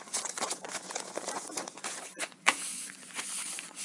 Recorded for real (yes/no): no